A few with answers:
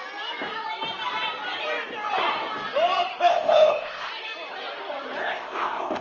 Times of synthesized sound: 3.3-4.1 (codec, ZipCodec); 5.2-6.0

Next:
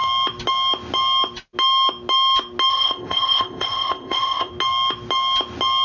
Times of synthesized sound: 2.7-4.5 (codec, ZipCodec)

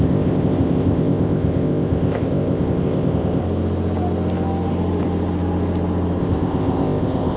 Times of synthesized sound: 0.0-3.4 (codec, ZipCodec); 6.2-7.4

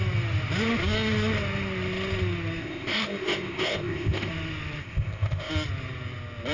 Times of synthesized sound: 2.6-4.3 (codec, ZipCodec); 4.8-5.5

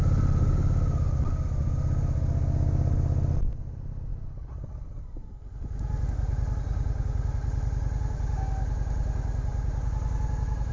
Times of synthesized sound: none

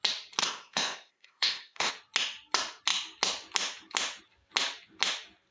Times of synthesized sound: 0.4-1.9 (codec, ZipCodec)